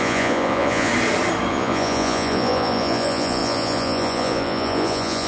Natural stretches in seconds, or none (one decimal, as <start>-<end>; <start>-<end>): 0.9-1.5